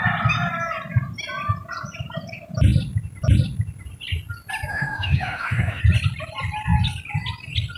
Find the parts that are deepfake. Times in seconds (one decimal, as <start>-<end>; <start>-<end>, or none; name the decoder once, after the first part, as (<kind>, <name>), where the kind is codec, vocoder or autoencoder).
4.7-5.8 (autoencoder, DAC-VAE)